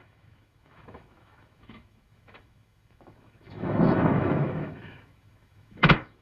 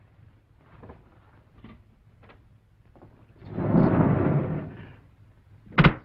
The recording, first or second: second